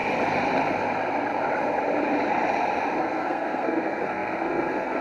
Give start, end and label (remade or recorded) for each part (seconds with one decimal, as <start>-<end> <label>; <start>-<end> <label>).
0.0-3.0 recorded; 3.0-5.0 remade